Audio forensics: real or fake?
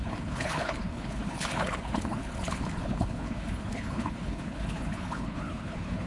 fake